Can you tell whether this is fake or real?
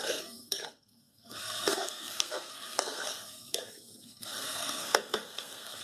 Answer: fake